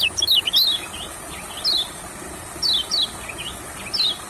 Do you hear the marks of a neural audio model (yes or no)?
no